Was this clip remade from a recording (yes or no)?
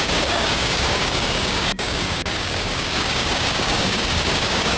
yes